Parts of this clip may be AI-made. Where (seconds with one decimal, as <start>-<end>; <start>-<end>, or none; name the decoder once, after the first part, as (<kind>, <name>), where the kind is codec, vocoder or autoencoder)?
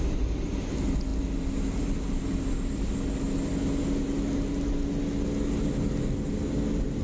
none